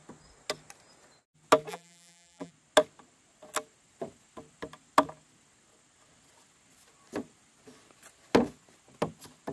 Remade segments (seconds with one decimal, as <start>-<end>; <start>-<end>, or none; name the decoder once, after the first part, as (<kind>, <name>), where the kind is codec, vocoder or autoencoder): 1.7-2.5 (vocoder, BigVGAN v2)